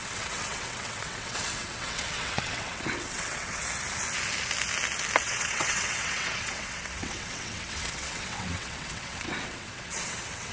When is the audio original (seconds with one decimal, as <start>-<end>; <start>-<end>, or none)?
3.6-5.2